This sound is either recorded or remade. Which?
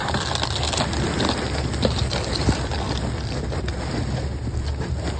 recorded